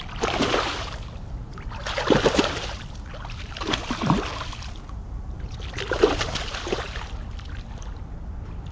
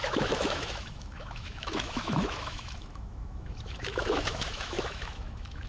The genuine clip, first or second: first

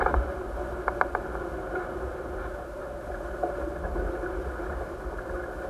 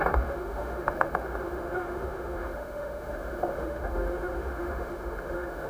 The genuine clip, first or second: first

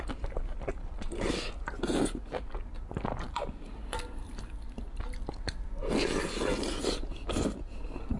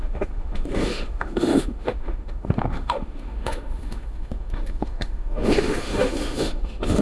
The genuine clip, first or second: first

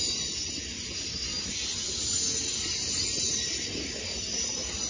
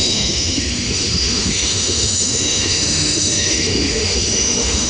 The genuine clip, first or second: first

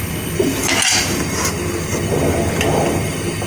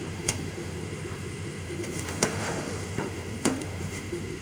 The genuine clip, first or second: first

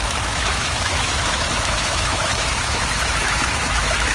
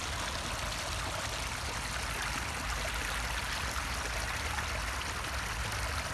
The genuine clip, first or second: second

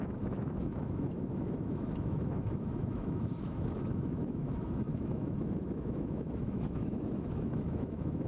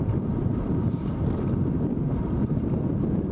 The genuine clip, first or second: second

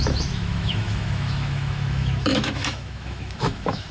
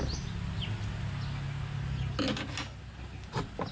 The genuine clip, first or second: second